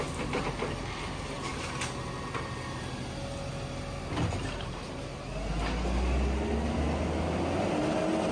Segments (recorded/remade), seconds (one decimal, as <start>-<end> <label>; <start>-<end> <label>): 0.0-8.3 recorded